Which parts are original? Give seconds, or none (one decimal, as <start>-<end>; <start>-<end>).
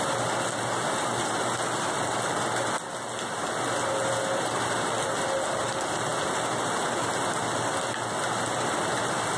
0.0-9.4